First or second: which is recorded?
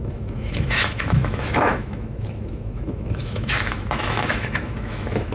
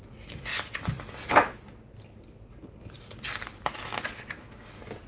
second